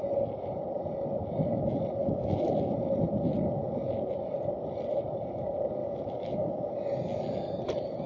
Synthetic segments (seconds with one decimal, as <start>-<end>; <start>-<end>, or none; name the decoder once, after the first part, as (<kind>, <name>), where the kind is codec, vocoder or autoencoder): 2.0-2.5 (autoencoder, DAC-VAE); 5.8-6.7